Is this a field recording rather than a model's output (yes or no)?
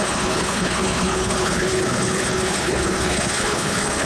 no